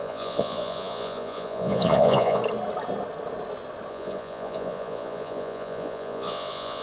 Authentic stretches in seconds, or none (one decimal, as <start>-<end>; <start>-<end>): 2.4-3.9